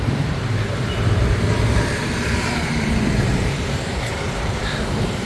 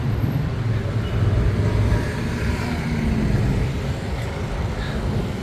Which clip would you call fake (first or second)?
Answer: first